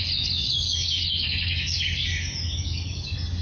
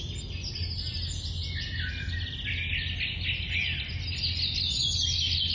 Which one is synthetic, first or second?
first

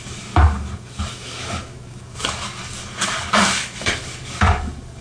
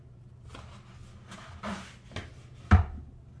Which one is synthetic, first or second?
first